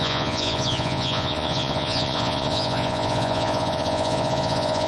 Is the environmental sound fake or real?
fake